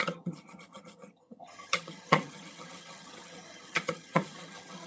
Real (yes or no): no